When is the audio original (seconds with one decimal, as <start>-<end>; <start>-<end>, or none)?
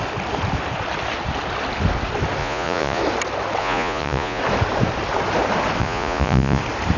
0.0-2.4; 3.0-3.6; 4.4-5.8; 6.6-7.0